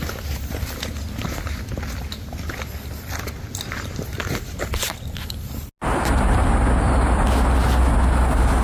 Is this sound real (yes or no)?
yes